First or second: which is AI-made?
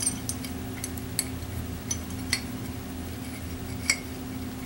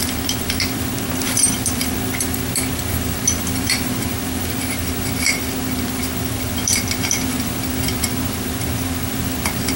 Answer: second